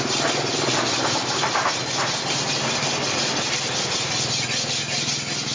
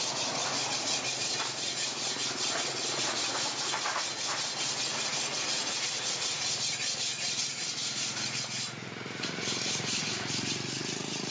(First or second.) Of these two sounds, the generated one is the second